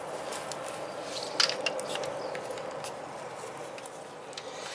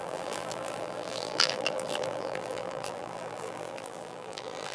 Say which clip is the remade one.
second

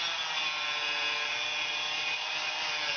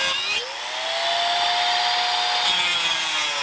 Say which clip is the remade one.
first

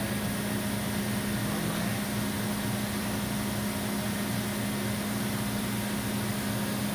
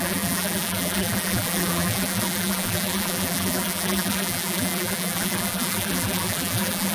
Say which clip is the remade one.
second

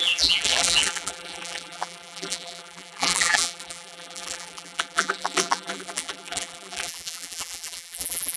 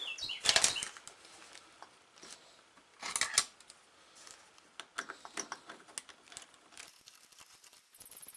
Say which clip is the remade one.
first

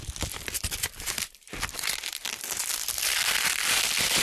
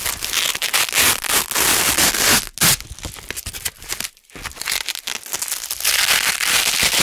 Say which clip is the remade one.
first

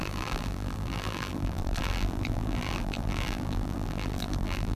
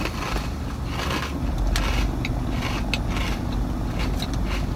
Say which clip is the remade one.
first